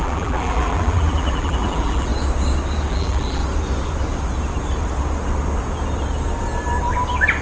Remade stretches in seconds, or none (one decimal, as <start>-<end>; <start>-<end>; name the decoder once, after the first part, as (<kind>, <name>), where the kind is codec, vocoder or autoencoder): 0.0-2.1 (vocoder, BigVGAN v2); 2.9-3.4